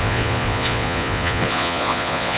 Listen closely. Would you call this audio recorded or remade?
remade